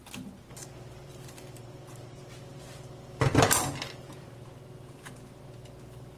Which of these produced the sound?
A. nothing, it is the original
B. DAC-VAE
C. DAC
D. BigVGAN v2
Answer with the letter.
A